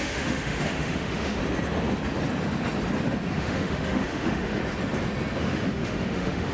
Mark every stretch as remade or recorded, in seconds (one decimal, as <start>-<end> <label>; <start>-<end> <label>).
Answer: 0.0-1.4 remade; 1.4-3.3 recorded; 3.3-4.6 remade; 4.6-5.4 recorded; 5.4-6.5 remade